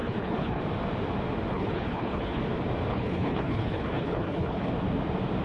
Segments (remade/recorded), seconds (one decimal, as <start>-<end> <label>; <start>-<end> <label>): 0.0-0.6 remade; 0.6-1.5 recorded; 1.5-2.4 remade; 2.4-2.9 recorded; 2.9-4.7 remade; 4.7-5.4 recorded